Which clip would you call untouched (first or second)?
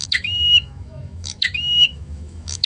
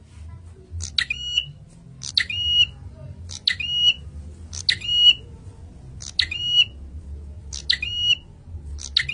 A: second